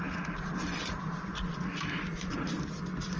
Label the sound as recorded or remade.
recorded